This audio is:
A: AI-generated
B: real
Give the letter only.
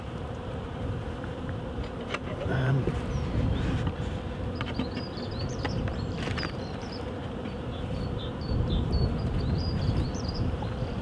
A